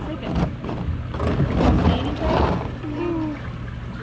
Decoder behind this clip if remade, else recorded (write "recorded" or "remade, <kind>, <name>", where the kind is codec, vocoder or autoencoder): recorded